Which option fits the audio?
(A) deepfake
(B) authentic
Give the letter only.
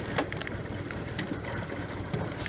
B